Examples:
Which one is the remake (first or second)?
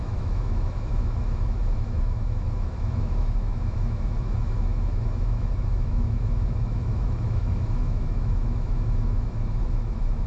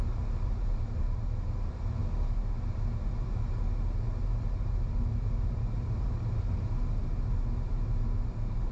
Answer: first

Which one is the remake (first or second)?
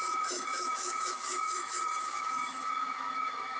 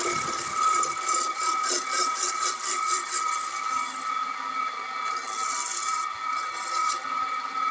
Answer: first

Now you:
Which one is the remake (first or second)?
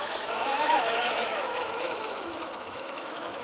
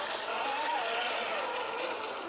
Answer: first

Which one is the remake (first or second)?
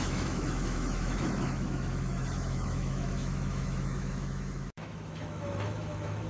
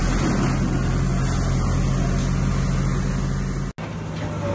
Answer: first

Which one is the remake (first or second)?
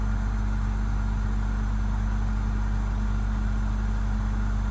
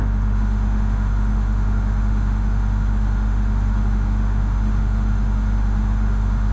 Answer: second